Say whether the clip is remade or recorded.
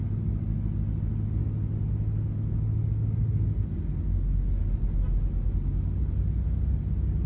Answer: recorded